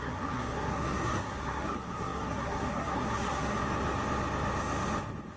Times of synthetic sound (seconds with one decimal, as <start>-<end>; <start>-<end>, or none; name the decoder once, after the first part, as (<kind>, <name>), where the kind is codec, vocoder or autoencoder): 0.0-3.6 (codec, SNAC)